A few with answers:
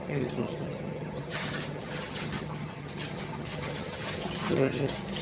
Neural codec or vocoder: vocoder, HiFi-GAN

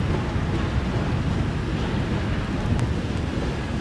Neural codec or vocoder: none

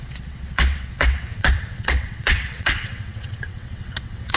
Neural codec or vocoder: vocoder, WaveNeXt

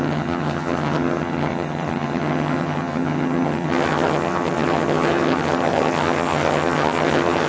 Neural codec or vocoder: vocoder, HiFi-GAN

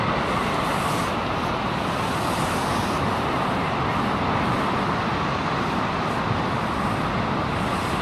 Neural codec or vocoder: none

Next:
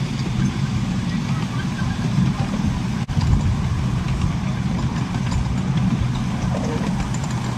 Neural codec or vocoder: none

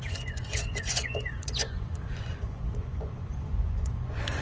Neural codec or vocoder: vocoder, Vocos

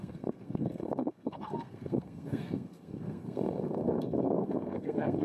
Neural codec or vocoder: codec, SNAC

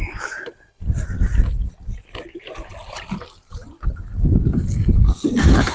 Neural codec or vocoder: none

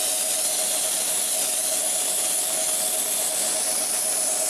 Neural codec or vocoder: none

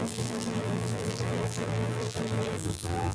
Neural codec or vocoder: vocoder, BigVGAN v2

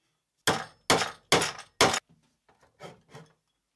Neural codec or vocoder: none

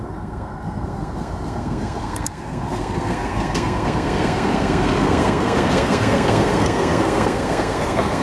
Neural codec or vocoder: codec, SNAC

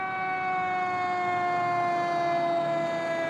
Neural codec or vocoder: none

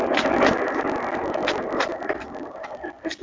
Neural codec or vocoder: none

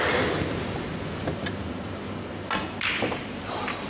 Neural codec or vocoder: none